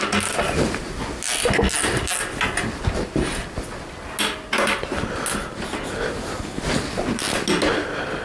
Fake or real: real